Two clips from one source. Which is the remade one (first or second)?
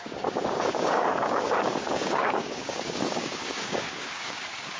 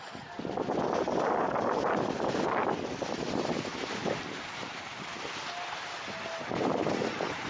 first